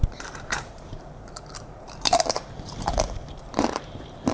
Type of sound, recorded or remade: remade